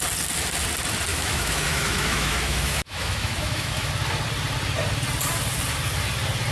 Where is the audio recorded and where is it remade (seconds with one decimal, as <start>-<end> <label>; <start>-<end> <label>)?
0.0-1.1 recorded; 1.1-3.9 remade; 3.9-6.5 recorded